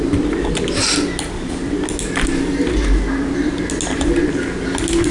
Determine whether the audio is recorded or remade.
recorded